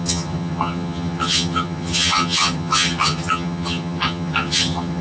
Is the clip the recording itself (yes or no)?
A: no